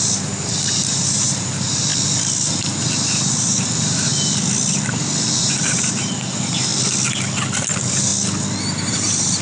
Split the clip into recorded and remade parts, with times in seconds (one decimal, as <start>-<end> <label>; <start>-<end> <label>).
0.0-1.9 remade; 1.9-2.8 recorded; 2.8-4.1 remade; 4.1-5.4 recorded; 5.4-6.7 remade; 6.7-7.7 recorded; 7.7-8.1 remade; 8.1-8.9 recorded; 8.9-9.4 remade